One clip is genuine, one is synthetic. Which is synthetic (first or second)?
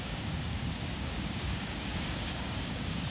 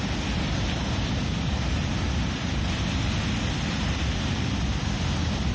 first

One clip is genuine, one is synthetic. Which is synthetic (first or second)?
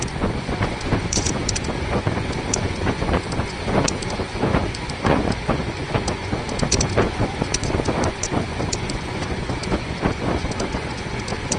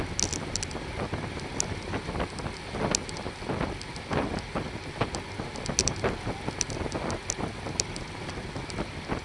first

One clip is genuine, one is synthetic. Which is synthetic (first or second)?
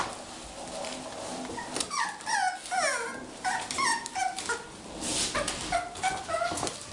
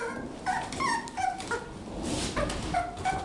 second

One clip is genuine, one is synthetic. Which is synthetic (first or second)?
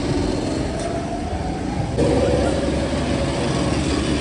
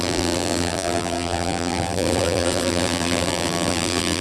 second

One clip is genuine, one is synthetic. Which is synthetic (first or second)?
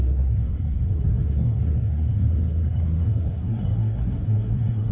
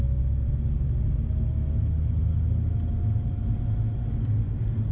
first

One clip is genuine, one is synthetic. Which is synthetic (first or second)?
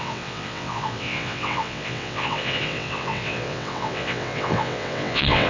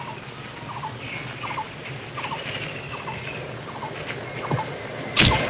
first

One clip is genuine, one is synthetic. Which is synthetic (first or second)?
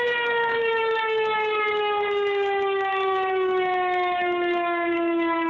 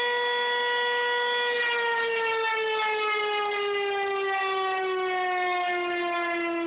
first